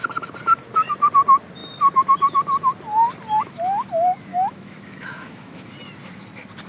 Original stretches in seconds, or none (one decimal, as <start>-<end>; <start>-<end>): 0.0-4.3; 5.7-6.7